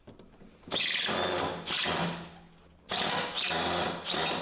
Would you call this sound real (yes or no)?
yes